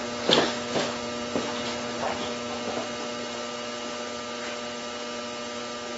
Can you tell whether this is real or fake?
real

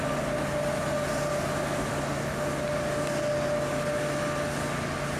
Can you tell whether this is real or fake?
real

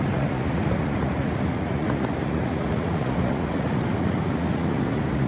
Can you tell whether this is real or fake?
fake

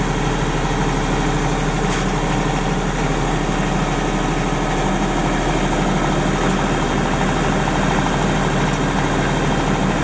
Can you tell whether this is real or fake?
real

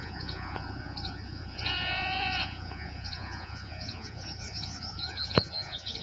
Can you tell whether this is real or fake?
fake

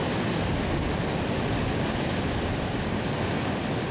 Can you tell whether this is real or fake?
real